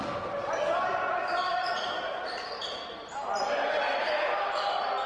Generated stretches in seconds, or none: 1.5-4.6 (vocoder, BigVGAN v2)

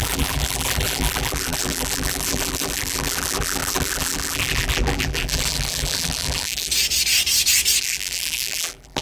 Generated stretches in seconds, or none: 0.0-6.7 (vocoder, BigVGAN v2); 7.8-9.0

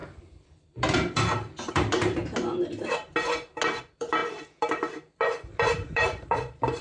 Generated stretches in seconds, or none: 0.0-2.2 (vocoder, BigVGAN v2); 3.8-6.8

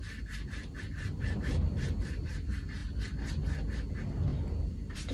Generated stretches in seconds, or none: 0.9-2.3 (vocoder, BigVGAN v2); 4.3-5.1

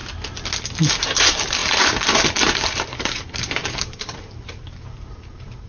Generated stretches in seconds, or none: 0.9-5.7 (vocoder, BigVGAN v2)